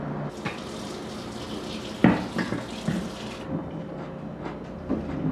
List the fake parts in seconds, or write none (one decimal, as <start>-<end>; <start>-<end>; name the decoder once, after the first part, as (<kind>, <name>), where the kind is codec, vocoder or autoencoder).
none